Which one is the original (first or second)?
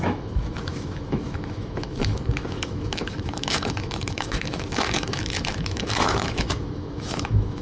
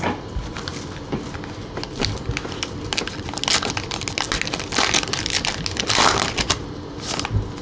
second